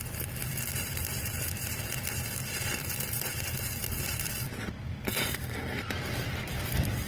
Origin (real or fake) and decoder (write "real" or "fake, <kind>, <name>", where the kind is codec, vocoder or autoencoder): fake, vocoder, BigVGAN v2